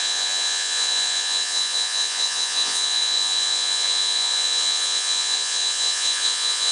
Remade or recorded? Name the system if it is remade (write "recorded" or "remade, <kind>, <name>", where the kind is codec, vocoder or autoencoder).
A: remade, vocoder, Vocos